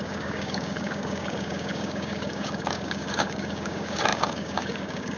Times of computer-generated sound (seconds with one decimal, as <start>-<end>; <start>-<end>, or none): 0.0-5.2